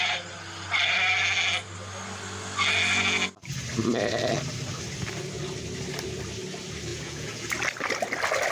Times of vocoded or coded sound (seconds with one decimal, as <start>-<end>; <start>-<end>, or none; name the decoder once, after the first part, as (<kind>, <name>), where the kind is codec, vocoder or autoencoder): 6.9-7.4 (vocoder, Vocos)